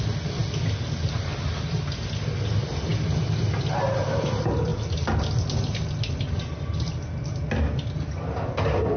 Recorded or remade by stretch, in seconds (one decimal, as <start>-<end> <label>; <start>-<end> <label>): 0.0-9.0 recorded